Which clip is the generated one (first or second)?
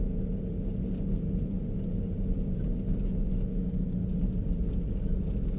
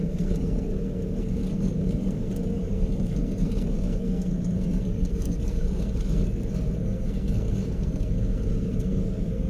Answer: second